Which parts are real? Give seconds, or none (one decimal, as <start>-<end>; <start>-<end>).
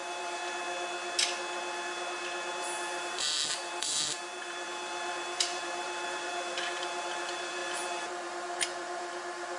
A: 0.4-2.5